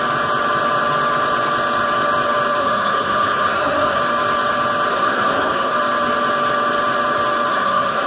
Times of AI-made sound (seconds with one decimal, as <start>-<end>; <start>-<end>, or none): 2.6-4.0; 4.9-5.8; 7.5-8.1